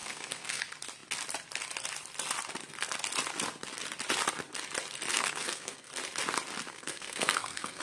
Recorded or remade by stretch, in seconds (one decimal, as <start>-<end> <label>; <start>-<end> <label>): 0.0-0.6 remade; 0.6-5.1 recorded; 5.1-5.9 remade; 5.9-6.7 recorded; 6.7-7.8 remade